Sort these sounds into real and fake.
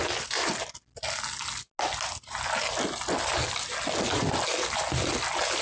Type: real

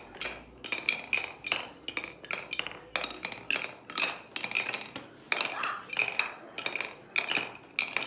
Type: real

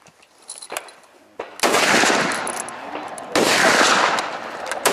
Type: real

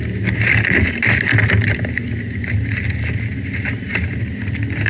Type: real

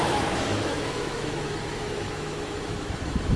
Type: fake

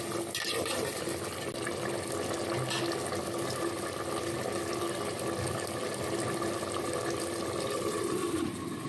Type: real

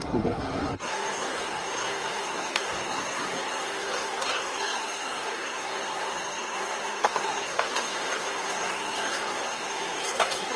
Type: fake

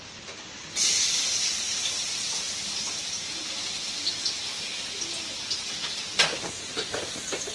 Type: real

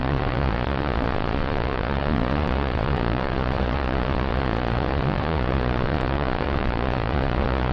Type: fake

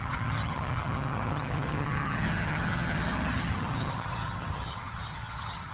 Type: fake